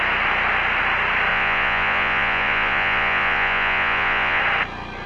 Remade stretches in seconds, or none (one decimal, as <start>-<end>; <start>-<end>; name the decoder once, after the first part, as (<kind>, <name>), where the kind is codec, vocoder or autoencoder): 1.3-4.4 (vocoder, Vocos)